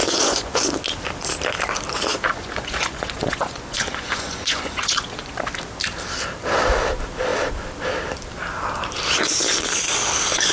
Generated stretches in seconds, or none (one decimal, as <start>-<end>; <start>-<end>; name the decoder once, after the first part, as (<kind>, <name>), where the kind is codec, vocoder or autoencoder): 0.0-0.6 (vocoder, Vocos); 2.1-5.3